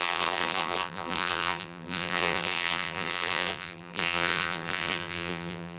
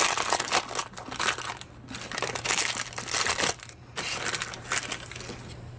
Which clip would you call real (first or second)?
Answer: second